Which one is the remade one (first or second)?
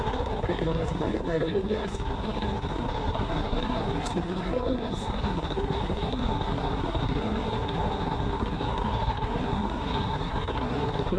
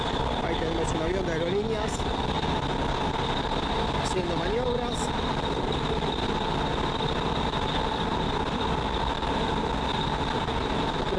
first